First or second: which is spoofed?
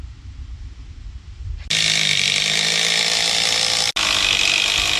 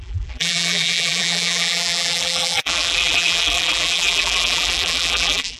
second